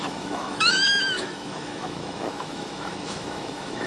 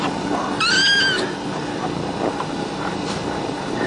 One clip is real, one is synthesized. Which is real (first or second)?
second